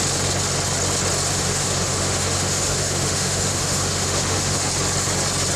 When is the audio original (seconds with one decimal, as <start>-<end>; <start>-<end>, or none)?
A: 0.0-1.3; 4.7-5.6